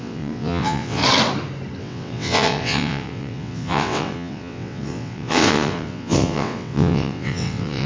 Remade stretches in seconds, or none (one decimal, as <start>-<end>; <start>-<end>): 0.0-1.0; 1.8-7.9